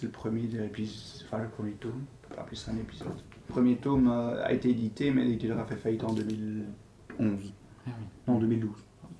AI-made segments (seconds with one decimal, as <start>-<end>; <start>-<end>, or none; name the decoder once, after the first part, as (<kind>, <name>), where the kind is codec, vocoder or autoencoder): 1.4-2.3 (autoencoder, DAC-VAE)